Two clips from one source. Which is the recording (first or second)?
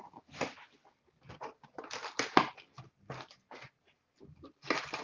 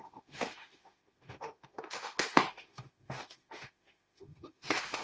first